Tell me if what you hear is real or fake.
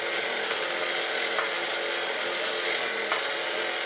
real